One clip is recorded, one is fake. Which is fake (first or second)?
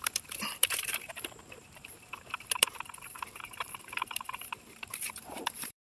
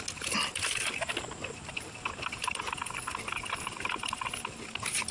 first